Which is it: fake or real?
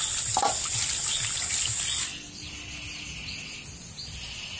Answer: real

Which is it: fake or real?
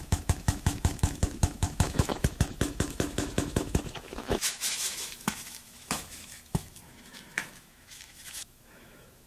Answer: fake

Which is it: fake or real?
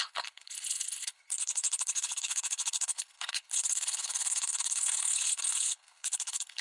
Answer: fake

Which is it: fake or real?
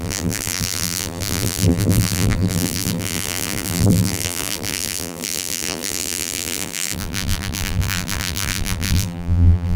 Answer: fake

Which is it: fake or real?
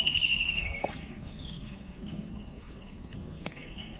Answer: fake